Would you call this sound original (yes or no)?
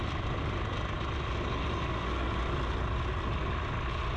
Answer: yes